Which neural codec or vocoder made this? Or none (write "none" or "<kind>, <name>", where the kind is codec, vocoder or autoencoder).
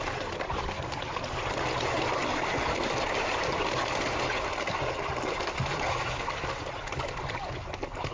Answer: none